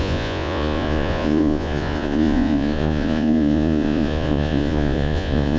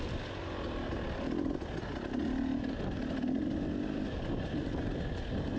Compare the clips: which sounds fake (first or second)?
first